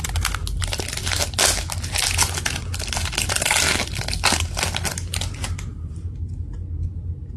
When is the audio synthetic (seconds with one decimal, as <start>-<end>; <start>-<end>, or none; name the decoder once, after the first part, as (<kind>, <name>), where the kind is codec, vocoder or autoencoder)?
none